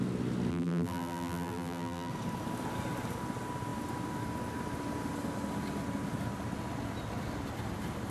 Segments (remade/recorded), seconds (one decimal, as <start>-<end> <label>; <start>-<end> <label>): 0.0-0.5 recorded; 0.5-2.1 remade; 2.1-8.1 recorded